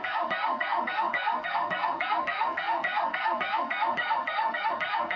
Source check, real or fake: fake